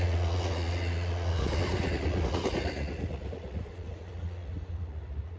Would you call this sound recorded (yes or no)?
no